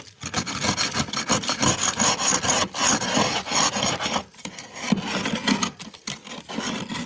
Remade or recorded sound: recorded